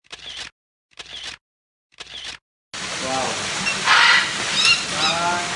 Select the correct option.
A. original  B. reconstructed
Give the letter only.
A